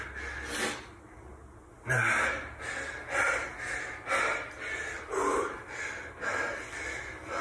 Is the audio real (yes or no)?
yes